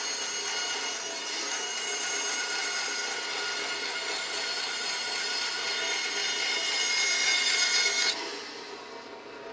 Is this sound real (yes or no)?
yes